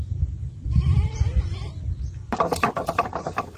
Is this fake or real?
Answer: real